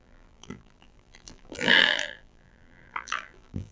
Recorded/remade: remade